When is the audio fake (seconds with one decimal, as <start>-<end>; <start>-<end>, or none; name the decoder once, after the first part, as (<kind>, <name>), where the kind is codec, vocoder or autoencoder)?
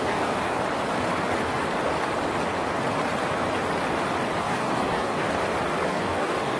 0.0-0.6 (codec, DAC); 4.4-5.3; 5.9-6.6